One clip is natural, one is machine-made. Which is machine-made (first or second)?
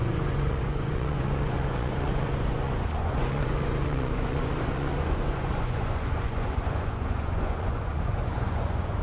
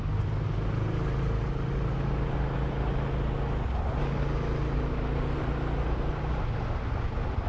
first